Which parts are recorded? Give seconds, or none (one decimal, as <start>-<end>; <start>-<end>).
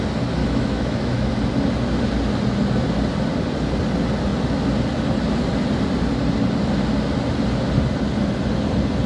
0.0-0.4; 1.3-9.1